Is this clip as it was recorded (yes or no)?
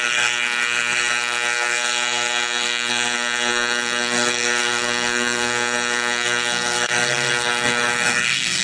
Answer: no